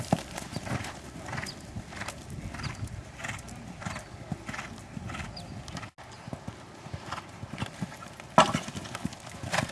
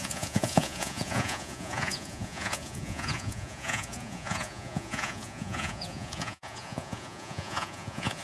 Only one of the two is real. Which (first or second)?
first